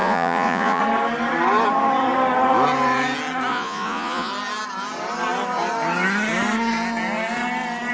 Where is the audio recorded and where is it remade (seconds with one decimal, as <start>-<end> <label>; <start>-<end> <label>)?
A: 0.0-0.8 remade; 0.8-3.5 recorded; 3.5-4.3 remade; 4.3-7.9 recorded